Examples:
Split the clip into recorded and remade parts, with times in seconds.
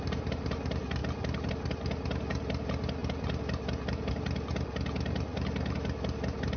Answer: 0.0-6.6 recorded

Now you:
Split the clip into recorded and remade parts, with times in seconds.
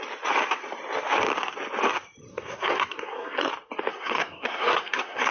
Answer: 0.0-2.3 recorded; 2.3-3.5 remade; 3.5-3.9 recorded; 3.9-5.3 remade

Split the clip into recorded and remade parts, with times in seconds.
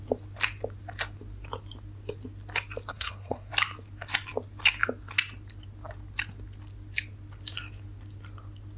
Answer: 0.0-2.9 recorded; 2.9-3.5 remade; 3.5-8.8 recorded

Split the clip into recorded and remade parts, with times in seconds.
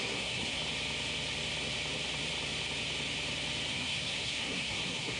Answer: 0.0-0.6 remade; 0.6-3.7 recorded; 3.7-5.2 remade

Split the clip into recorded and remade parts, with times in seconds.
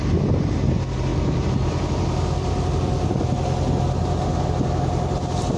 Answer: 0.0-5.6 recorded